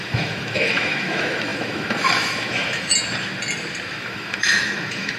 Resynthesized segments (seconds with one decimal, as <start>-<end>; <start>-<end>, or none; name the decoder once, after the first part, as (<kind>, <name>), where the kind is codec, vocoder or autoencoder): 0.0-2.9 (autoencoder, DAC-VAE); 4.0-5.2

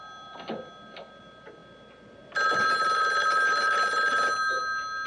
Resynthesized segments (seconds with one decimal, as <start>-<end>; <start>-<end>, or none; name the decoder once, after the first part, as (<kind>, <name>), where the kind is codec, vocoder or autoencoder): none

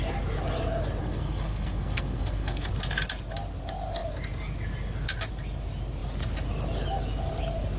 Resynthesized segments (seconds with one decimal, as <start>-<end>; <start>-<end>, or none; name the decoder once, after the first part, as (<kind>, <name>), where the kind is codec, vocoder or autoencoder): 1.0-2.7 (codec, SNAC)